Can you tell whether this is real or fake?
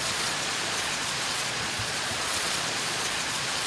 fake